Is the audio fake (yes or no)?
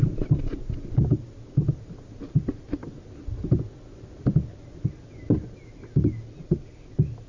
no